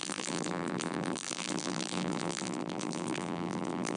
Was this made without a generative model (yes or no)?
no